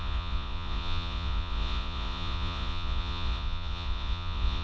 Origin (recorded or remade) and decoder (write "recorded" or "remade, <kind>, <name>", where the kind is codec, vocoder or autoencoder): remade, vocoder, Vocos